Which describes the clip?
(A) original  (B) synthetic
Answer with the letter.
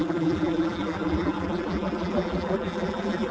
B